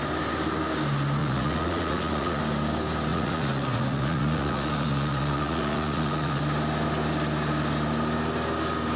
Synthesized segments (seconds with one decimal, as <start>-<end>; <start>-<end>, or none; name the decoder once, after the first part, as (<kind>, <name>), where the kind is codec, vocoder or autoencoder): 1.2-2.4 (vocoder, Vocos); 3.1-6.4